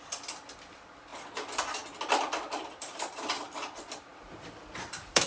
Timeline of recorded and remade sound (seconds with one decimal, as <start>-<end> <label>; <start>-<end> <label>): 0.0-1.1 remade; 1.1-2.1 recorded; 2.1-5.3 remade